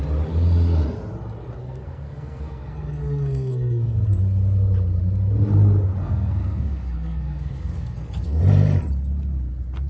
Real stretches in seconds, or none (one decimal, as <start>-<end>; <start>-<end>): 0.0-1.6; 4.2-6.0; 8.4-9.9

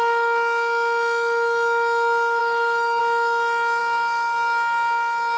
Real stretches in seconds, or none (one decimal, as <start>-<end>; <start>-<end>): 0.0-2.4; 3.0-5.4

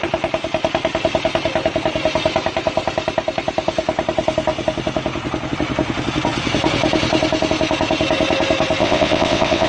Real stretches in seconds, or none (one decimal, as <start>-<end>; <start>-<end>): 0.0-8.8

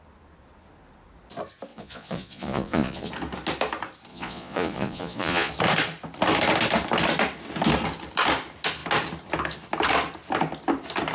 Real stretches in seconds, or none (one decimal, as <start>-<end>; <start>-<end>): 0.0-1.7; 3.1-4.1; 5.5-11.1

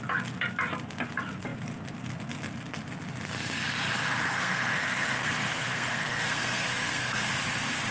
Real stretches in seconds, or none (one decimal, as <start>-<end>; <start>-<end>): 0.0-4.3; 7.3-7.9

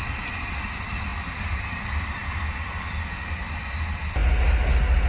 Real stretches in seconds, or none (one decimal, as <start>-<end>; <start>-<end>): 0.0-5.1